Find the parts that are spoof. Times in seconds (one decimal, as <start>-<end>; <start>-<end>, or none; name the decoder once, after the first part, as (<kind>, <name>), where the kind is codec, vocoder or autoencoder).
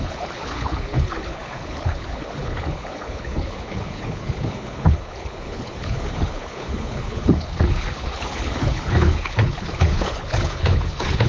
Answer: 0.0-11.3 (codec, HILCodec)